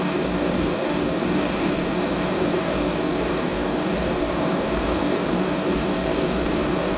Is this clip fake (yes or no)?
yes